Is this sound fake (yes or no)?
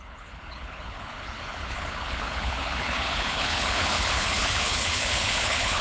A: yes